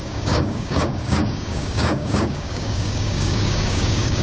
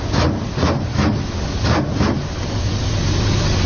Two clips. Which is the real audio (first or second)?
second